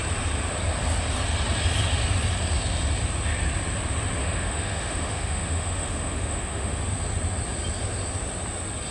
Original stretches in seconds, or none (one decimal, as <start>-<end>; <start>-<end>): 0.0-4.2; 6.8-8.9